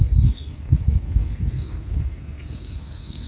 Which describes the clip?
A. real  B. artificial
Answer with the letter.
B